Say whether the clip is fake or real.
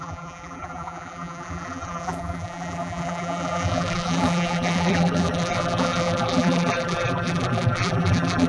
fake